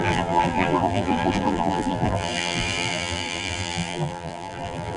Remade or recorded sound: remade